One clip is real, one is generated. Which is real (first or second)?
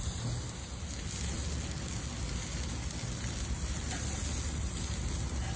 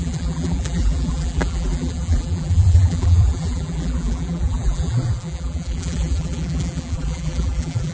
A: first